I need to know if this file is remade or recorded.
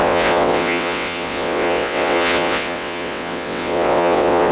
remade